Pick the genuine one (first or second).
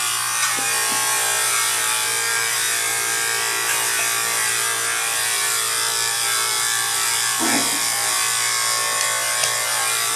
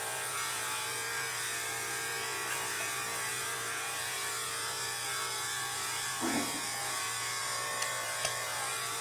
first